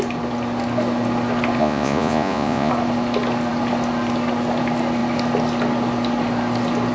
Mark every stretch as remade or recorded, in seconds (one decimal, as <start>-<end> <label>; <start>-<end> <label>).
0.0-1.6 recorded; 1.6-2.7 remade; 2.7-6.9 recorded